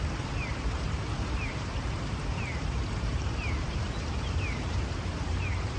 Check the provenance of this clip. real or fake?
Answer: fake